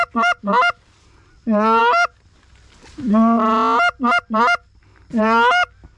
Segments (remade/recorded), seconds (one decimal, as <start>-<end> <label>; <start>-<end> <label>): 0.0-6.0 recorded